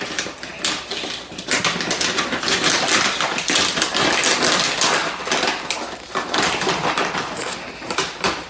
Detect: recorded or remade recorded